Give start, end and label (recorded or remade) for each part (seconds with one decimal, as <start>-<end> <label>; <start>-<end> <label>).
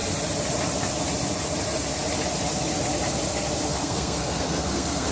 0.0-3.7 recorded; 3.7-5.1 remade